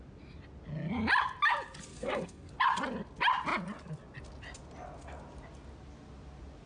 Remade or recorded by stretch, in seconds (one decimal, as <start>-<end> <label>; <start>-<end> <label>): 0.0-1.9 recorded; 1.9-2.5 remade; 2.5-6.7 recorded